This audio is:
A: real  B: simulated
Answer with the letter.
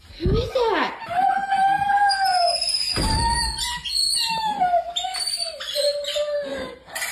A